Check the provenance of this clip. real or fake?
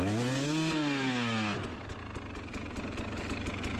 real